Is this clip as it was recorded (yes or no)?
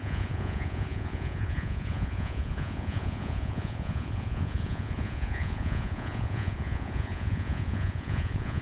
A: no